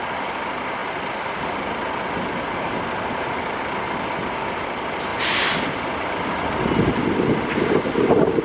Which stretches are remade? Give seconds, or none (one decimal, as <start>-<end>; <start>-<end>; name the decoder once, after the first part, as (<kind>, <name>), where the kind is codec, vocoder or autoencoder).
5.1-7.8 (vocoder, BigVGAN v2)